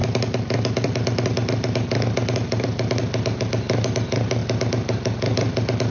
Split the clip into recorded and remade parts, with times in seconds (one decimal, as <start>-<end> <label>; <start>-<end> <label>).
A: 0.0-5.9 recorded